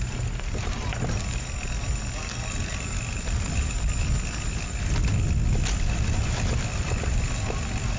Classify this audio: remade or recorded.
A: recorded